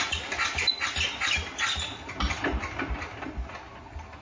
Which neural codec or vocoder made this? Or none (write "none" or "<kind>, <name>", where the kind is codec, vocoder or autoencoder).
none